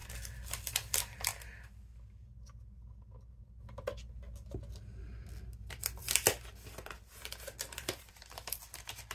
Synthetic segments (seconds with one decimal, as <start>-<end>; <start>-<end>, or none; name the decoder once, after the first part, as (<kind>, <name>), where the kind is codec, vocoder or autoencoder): 6.0-8.6 (vocoder, BigVGAN v2)